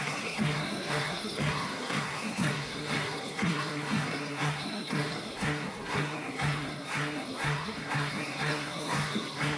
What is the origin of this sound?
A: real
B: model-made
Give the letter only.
B